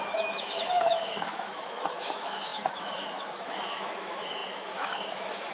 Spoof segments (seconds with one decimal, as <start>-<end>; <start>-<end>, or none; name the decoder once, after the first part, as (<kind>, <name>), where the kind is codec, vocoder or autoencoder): 0.0-5.5 (autoencoder, DAC-VAE)

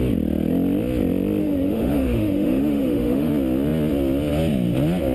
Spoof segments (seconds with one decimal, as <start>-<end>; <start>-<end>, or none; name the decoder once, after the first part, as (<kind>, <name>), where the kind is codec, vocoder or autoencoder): 1.4-3.3 (autoencoder, DAC-VAE)